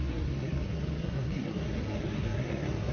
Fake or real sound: fake